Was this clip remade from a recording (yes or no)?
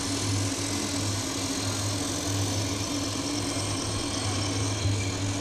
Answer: no